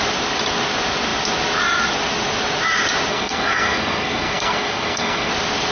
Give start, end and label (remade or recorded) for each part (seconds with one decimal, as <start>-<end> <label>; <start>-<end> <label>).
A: 0.0-3.1 recorded; 3.1-5.3 remade; 5.3-5.7 recorded